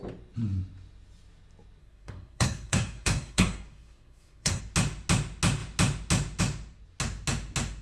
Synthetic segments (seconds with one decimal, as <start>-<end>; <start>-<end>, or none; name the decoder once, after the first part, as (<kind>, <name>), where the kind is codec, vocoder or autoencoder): 1.8-4.6 (codec, SNAC)